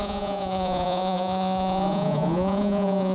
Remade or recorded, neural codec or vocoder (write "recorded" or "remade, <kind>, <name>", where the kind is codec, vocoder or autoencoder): remade, vocoder, Vocos